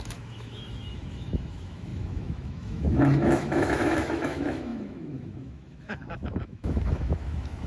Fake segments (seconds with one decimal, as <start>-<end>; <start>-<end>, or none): 0.0-7.7